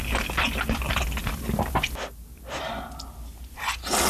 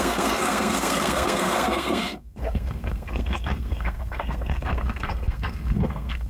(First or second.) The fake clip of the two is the second